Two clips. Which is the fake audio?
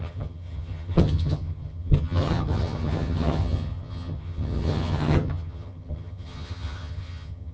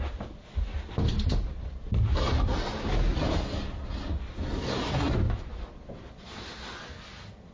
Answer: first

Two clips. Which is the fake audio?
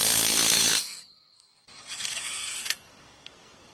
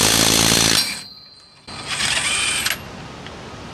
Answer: first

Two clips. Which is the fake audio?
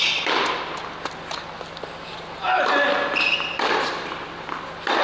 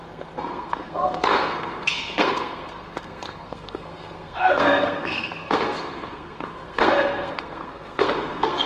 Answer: second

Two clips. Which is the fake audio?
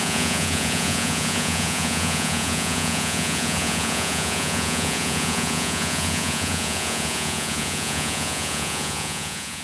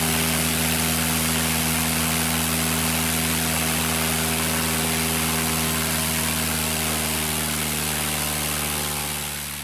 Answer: first